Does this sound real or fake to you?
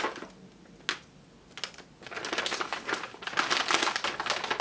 real